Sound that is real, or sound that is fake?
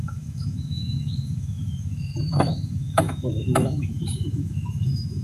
fake